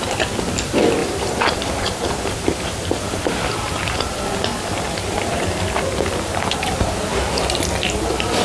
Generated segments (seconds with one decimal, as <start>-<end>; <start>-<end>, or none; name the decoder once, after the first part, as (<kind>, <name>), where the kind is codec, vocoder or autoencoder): 1.0-3.2 (vocoder, BigVGAN v2)